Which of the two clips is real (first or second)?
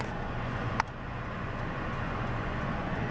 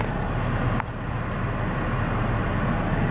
second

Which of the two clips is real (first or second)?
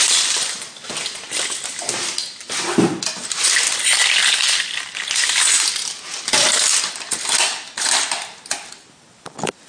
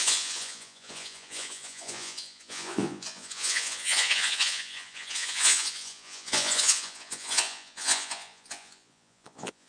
first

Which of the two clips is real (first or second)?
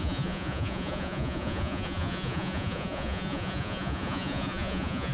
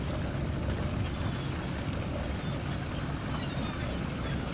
second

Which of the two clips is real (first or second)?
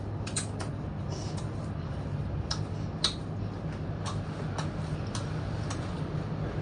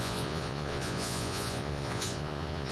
first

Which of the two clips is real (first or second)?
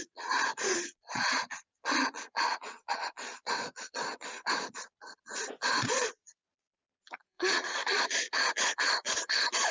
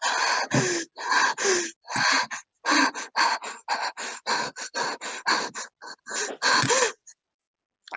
second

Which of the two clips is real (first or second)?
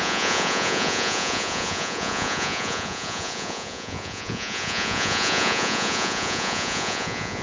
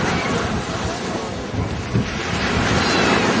second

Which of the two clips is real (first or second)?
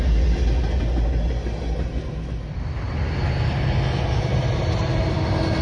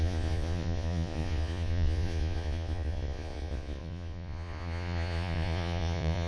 first